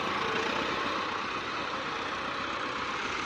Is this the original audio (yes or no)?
yes